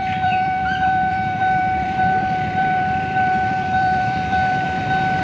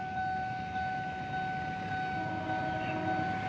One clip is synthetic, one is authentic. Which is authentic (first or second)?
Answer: second